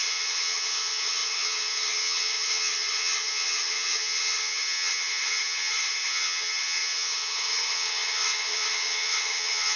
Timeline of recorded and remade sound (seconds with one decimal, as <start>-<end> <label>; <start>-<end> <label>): 0.0-9.8 remade